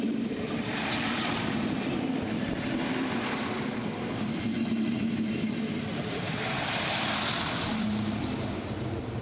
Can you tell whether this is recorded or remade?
remade